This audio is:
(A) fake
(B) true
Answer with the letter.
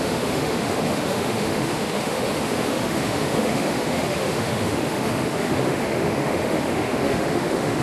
A